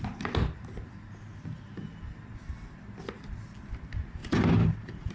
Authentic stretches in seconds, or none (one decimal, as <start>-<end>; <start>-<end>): 0.0-1.3; 1.9-4.2